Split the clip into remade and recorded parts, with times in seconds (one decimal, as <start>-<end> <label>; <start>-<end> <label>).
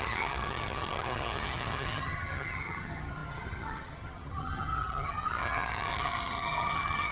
0.0-7.1 remade